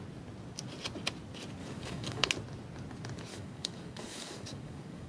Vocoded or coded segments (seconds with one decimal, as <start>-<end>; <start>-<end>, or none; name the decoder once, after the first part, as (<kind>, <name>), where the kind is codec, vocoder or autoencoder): 1.6-2.3 (codec, DAC); 3.3-5.1